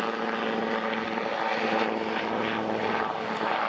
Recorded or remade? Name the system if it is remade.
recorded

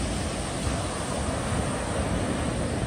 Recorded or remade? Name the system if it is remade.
recorded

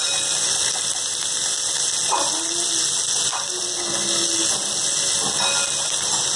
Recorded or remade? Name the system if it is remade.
recorded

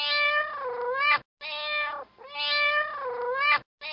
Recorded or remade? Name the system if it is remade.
recorded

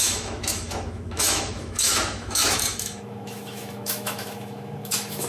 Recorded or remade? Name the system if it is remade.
remade, autoencoder, DAC-VAE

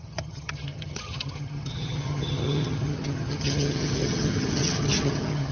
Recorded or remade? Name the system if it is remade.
remade, vocoder, HiFi-GAN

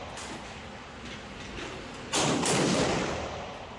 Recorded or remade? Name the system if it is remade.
recorded